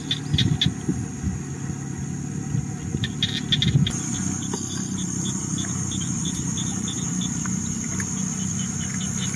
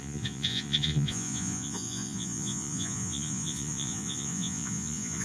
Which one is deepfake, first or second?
second